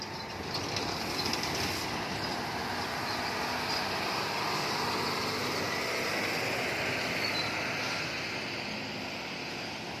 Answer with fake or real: real